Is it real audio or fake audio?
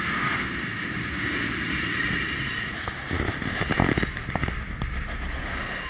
real